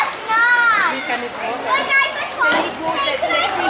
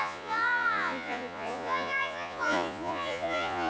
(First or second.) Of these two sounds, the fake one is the second